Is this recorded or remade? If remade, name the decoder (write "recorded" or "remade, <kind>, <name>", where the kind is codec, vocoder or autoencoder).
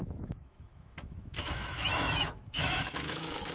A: remade, autoencoder, DAC-VAE